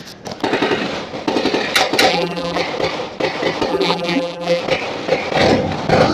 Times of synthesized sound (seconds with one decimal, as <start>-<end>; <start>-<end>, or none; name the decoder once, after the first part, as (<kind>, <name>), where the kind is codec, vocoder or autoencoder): 2.1-2.6 (vocoder, BigVGAN v2); 3.7-4.6